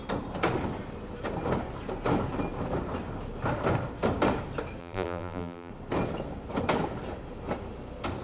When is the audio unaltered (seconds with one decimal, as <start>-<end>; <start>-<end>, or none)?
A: 0.0-4.8; 5.7-8.2